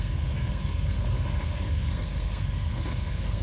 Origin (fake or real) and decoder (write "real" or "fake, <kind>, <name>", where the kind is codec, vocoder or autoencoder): fake, codec, SNAC